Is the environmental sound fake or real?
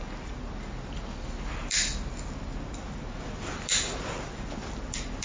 real